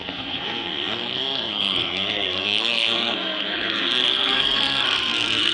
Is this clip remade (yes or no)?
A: yes